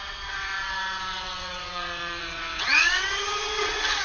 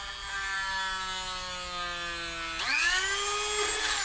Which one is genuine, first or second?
second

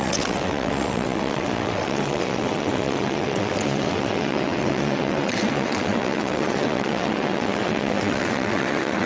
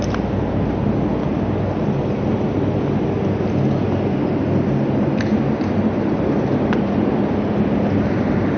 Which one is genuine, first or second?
second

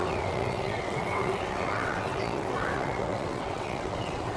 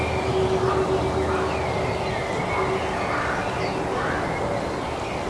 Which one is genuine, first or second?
second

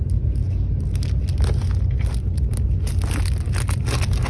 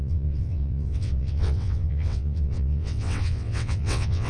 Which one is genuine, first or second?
first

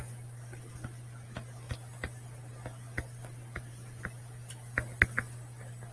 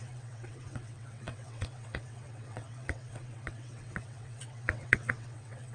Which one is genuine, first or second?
first